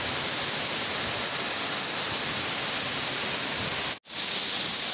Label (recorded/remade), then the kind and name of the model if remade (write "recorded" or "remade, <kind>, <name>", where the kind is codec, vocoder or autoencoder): recorded